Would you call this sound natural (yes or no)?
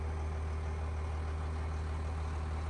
yes